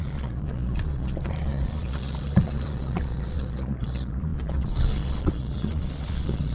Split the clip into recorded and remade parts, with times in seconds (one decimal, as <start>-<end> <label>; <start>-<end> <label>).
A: 0.0-6.5 remade